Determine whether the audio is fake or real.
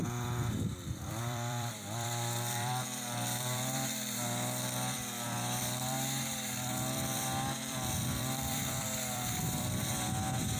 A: fake